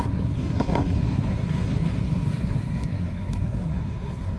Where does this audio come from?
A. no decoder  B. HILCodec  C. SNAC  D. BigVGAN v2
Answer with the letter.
C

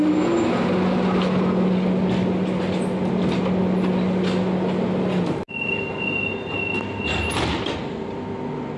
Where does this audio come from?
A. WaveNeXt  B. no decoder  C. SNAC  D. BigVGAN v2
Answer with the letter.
B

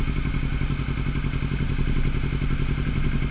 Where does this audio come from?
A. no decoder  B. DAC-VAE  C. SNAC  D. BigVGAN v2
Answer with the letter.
A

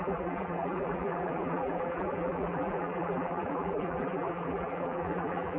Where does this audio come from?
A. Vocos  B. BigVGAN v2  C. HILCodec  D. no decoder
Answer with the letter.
B